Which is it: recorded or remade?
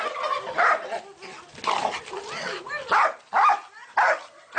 remade